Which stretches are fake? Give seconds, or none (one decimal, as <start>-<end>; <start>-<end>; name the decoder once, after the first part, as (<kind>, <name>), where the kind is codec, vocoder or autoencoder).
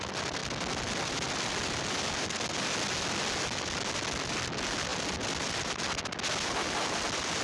none